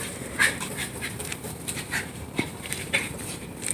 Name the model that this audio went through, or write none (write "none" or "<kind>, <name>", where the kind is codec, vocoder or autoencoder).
vocoder, BigVGAN v2